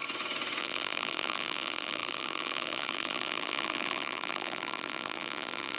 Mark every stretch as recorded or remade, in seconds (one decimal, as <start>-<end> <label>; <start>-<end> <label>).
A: 0.0-0.6 recorded; 0.6-5.8 remade